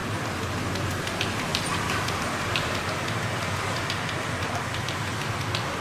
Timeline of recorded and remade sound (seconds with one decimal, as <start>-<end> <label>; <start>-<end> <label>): 0.0-1.5 recorded; 1.5-4.5 remade; 4.5-5.8 recorded